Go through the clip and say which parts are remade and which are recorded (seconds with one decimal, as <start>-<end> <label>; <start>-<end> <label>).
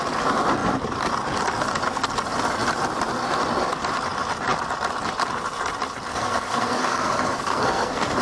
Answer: 0.0-6.1 recorded; 6.1-8.2 remade